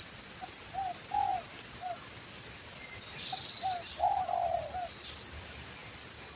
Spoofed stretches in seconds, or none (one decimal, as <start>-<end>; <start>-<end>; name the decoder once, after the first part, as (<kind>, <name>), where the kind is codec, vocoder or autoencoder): none